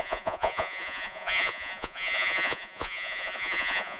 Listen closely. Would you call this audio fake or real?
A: fake